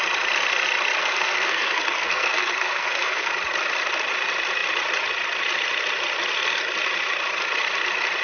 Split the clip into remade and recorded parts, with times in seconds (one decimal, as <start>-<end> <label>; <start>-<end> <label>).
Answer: 0.0-1.0 recorded; 1.0-3.3 remade; 3.3-8.2 recorded

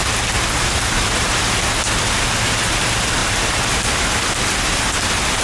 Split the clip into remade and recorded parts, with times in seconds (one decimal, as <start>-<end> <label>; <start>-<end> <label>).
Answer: 0.0-5.4 recorded

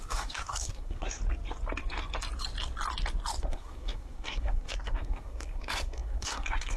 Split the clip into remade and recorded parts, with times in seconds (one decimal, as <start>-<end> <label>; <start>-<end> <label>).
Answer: 0.0-1.2 remade; 1.2-3.4 recorded; 3.4-6.8 remade

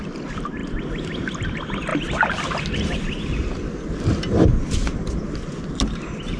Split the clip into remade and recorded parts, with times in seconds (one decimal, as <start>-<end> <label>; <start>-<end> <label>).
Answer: 0.0-6.4 recorded

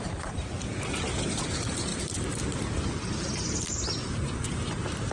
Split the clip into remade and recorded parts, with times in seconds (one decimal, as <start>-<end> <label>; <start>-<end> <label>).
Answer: 0.0-5.1 remade

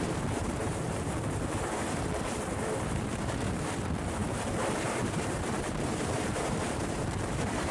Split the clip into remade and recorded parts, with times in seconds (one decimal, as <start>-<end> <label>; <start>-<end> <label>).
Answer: 0.0-7.7 remade

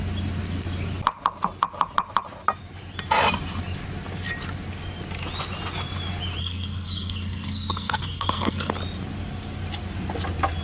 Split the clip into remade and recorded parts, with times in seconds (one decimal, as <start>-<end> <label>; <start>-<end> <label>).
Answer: 0.0-6.4 recorded; 6.4-8.7 remade; 8.7-10.6 recorded